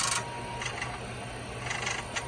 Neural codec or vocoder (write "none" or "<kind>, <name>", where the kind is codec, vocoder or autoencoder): none